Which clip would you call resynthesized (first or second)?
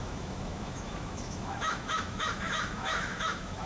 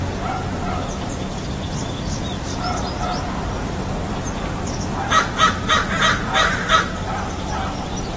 first